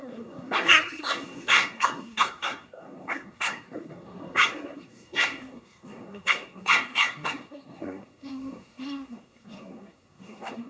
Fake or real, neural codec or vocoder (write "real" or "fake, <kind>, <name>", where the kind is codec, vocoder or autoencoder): fake, codec, SNAC